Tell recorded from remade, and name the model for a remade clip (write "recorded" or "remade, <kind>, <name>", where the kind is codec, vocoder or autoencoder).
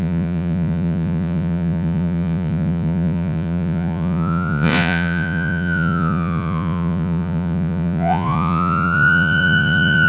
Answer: remade, vocoder, Vocos